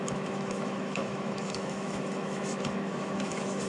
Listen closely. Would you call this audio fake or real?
fake